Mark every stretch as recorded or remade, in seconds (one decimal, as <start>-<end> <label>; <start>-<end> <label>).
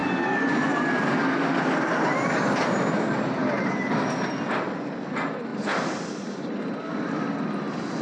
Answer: 0.0-8.0 recorded